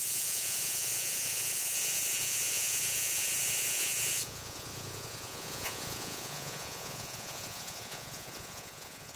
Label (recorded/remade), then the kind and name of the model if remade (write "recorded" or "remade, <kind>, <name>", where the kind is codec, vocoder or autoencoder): remade, vocoder, Vocos